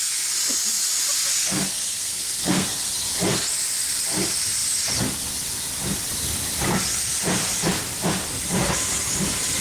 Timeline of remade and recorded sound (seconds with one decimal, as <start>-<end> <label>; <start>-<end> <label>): 0.0-1.3 recorded; 1.3-2.9 remade; 2.9-9.6 recorded